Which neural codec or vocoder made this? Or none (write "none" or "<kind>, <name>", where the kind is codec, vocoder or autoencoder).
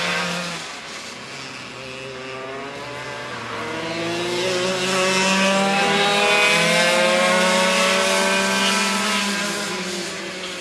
none